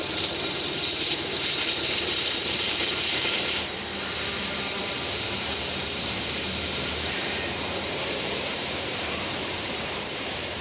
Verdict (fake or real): fake